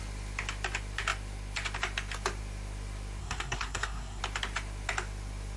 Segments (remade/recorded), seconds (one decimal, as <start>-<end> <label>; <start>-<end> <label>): 0.0-3.2 recorded; 3.2-4.2 remade; 4.2-5.6 recorded